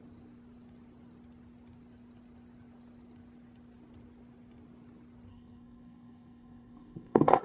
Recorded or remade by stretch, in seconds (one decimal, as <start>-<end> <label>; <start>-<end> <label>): 0.0-5.3 recorded; 5.3-7.4 remade